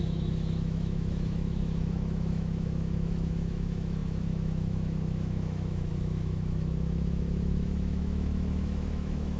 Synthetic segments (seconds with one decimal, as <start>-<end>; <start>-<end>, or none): 0.0-9.4